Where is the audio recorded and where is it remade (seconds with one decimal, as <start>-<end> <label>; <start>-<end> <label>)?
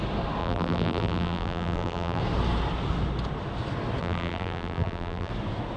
0.0-0.4 recorded; 0.4-2.2 remade; 2.2-4.0 recorded; 4.0-5.3 remade; 5.3-5.8 recorded